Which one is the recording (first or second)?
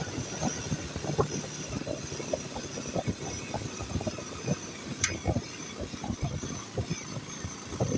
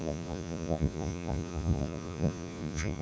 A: first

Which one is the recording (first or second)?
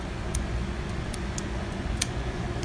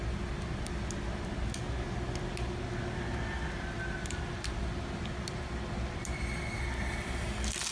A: second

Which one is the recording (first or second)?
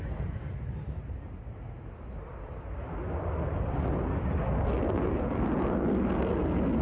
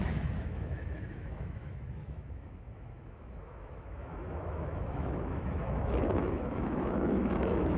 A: first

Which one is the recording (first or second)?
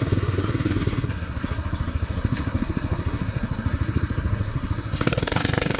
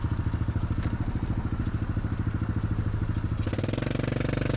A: second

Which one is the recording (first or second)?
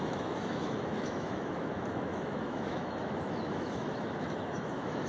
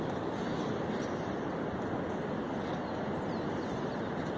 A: second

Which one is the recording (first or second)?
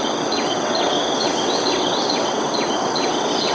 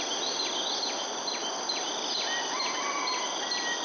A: second